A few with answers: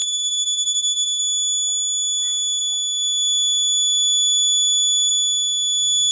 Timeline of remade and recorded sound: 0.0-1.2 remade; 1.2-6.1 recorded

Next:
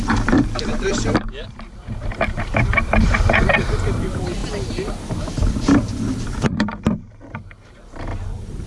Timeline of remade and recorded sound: 0.0-4.4 remade; 4.4-6.2 recorded; 6.2-8.7 remade

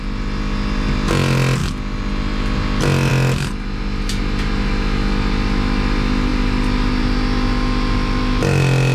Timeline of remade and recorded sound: 0.0-8.9 recorded

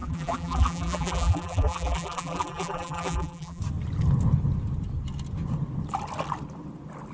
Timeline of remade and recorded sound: 0.0-3.6 remade; 3.6-7.1 recorded